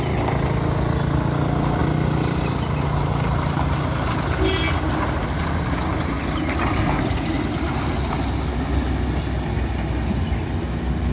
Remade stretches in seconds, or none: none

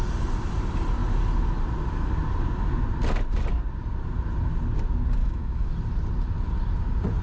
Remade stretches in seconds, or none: 5.2-5.7 (autoencoder, DAC-VAE)

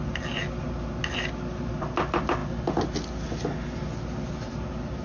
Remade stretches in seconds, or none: none

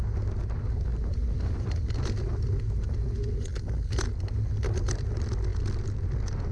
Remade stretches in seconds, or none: none

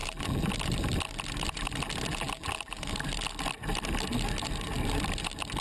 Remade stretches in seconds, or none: 0.0-0.5 (vocoder, BigVGAN v2); 2.1-2.8

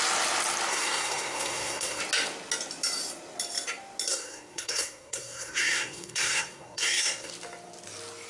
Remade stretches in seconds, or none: 0.7-2.0 (codec, SNAC); 4.1-7.3

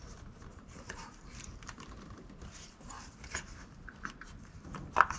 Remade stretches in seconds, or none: 0.5-3.6 (vocoder, BigVGAN v2)